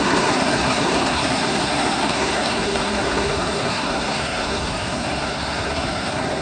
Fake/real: fake